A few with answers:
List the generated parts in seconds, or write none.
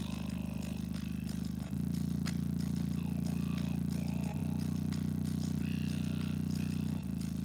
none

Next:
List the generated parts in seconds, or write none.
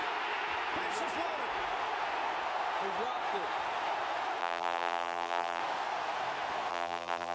4.4-5.6 (vocoder, BigVGAN v2); 6.7-7.3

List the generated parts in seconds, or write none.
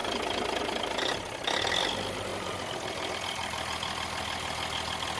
2.3-3.1 (vocoder, BigVGAN v2)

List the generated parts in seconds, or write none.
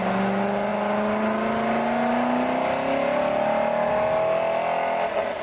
none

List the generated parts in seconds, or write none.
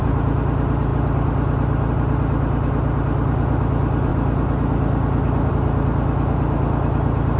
none